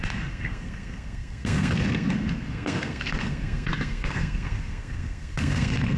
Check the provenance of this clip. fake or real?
fake